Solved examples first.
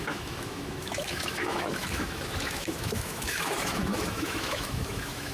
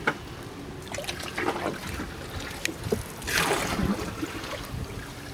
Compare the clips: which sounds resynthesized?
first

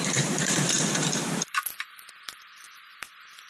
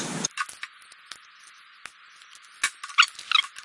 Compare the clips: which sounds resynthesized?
first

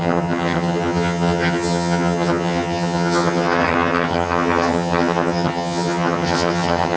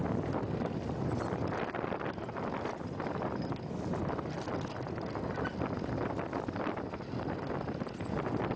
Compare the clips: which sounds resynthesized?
first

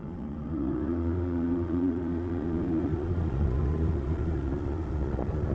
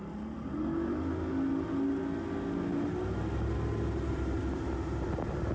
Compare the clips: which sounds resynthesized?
first